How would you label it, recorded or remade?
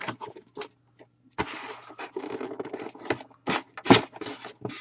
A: recorded